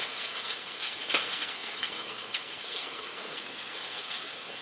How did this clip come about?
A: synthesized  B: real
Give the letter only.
A